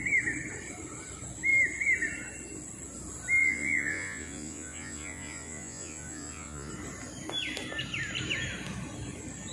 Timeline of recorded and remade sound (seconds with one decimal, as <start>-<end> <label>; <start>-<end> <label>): 0.0-3.4 recorded; 3.4-6.7 remade; 6.7-9.5 recorded